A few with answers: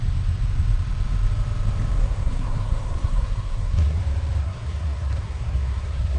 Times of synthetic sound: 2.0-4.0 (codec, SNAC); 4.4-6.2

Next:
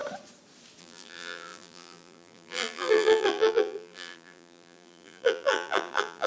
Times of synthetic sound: 0.8-6.3 (vocoder, BigVGAN v2)

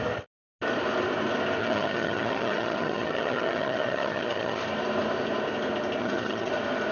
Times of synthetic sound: 1.6-4.6 (vocoder, HiFi-GAN); 6.0-6.5